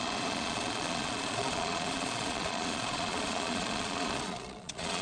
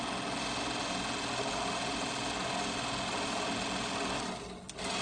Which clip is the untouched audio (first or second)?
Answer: second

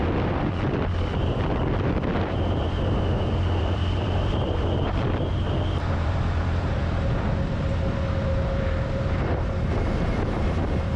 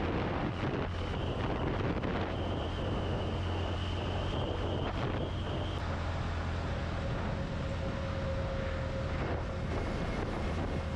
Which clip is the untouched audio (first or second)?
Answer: second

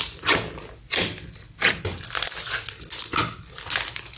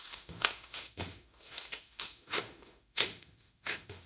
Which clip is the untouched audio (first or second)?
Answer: first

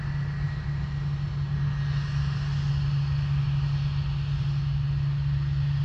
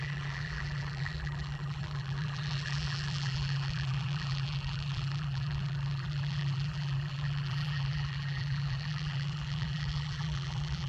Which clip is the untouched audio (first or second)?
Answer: first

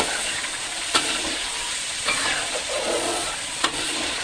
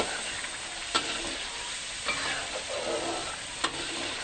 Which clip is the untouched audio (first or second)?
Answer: second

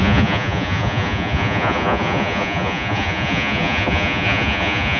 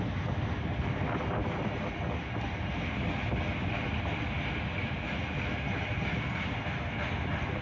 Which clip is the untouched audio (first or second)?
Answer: second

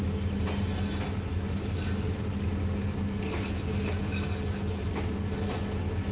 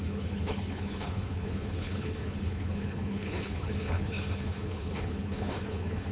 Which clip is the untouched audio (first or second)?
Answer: first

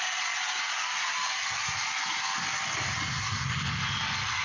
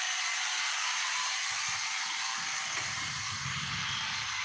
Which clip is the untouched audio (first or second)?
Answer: first